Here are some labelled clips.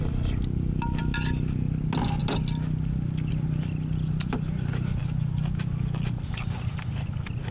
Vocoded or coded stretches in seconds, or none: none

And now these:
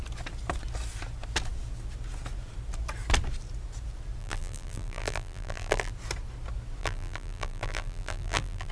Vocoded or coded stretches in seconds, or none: 4.2-5.9 (vocoder, BigVGAN v2); 6.8-8.7